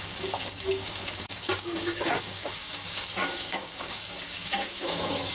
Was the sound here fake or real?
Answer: fake